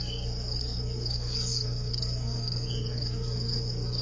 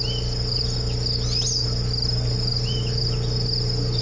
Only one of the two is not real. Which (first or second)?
first